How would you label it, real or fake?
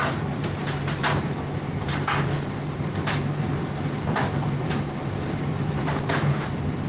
fake